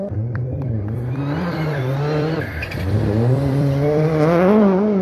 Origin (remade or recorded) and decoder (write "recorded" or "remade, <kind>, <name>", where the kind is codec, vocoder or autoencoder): remade, vocoder, BigVGAN v2